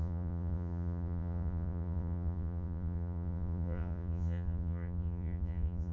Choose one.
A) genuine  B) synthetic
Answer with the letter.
B